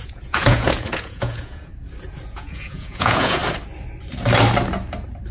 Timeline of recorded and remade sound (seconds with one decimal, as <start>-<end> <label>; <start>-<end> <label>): 0.0-1.7 remade; 1.7-2.3 recorded; 2.3-3.4 remade; 3.4-5.3 recorded